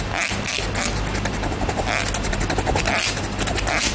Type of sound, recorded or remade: recorded